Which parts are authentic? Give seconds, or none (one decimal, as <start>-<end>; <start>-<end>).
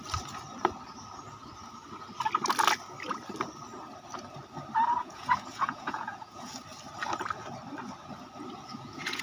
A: 0.0-5.0; 6.5-8.7